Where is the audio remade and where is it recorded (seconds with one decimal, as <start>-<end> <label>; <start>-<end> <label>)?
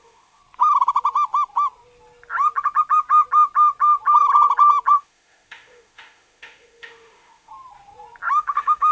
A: 0.0-0.4 remade; 0.4-4.9 recorded; 4.9-7.5 remade; 7.5-8.3 recorded; 8.3-8.9 remade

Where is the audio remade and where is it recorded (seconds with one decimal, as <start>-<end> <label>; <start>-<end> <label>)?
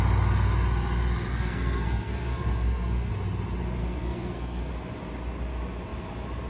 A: 0.0-1.3 recorded; 1.3-3.1 remade; 3.1-3.8 recorded; 3.8-4.7 remade; 4.7-6.5 recorded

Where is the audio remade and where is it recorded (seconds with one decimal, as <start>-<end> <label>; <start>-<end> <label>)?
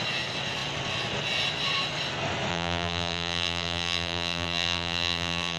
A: 0.0-2.5 recorded; 2.5-5.6 remade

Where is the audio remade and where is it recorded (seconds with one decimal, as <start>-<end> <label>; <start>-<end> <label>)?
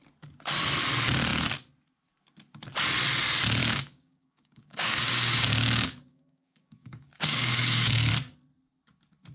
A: 0.0-3.6 recorded; 3.6-8.1 remade; 8.1-9.3 recorded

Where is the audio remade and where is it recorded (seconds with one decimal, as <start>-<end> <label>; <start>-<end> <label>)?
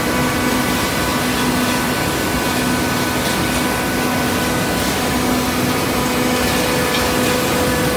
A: 0.0-8.0 recorded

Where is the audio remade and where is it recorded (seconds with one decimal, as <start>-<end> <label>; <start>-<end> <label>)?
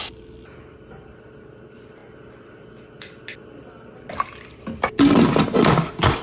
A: 0.0-6.2 recorded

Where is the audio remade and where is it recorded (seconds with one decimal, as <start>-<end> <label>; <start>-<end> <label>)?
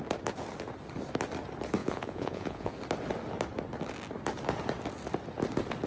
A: 0.0-1.8 recorded; 1.8-2.7 remade; 2.7-5.9 recorded